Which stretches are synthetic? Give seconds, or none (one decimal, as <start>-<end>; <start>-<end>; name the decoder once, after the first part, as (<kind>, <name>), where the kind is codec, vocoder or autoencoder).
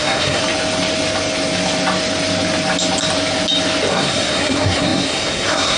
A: 0.0-0.4 (codec, SNAC); 3.9-5.8